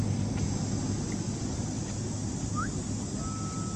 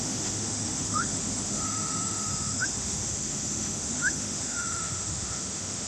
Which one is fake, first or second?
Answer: second